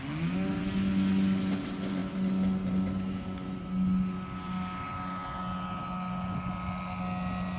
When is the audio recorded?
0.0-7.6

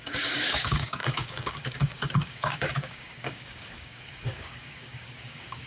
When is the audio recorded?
none

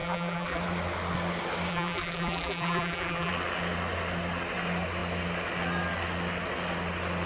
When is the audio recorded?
0.6-1.7; 3.3-7.3

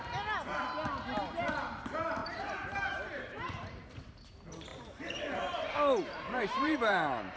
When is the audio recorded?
0.0-2.2; 4.3-4.7; 5.3-6.0

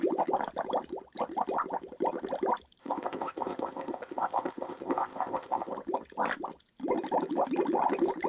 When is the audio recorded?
0.0-2.8; 5.7-8.3

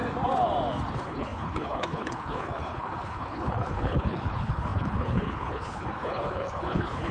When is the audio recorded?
0.0-0.9

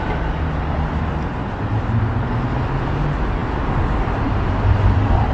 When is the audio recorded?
0.0-5.3